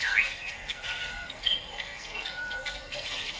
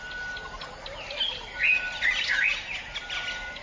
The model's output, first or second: first